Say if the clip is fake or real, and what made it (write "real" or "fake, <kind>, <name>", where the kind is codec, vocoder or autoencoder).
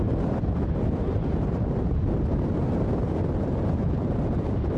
real